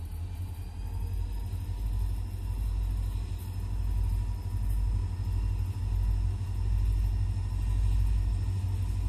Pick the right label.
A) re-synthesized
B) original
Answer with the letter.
B